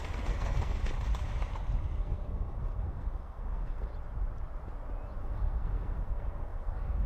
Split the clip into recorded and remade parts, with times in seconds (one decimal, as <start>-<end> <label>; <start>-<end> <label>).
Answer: 0.0-0.8 remade; 0.8-1.8 recorded; 1.8-3.9 remade; 3.9-5.2 recorded; 5.2-7.1 remade